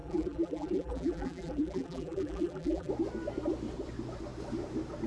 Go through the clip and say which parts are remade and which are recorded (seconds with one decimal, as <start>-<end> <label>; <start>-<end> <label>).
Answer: 0.0-2.9 remade; 2.9-5.1 recorded